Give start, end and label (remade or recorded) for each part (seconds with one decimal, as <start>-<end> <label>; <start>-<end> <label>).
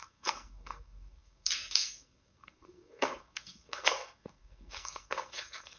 0.0-5.8 remade